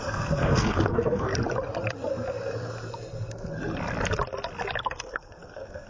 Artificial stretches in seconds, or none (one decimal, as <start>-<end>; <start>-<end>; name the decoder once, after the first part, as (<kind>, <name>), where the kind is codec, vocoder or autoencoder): 0.0-1.3 (codec, SNAC); 4.8-5.9